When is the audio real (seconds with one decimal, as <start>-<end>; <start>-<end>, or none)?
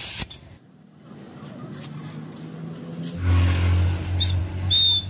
0.0-5.1